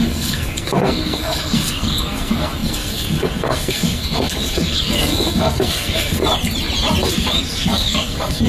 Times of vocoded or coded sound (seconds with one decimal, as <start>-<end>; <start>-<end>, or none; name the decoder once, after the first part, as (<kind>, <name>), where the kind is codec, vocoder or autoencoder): 0.0-6.2 (codec, SNAC); 7.1-8.5